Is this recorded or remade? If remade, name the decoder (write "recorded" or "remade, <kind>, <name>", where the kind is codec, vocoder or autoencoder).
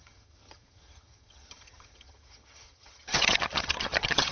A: remade, vocoder, HiFi-GAN